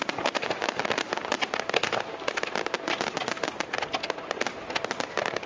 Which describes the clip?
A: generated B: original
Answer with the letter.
B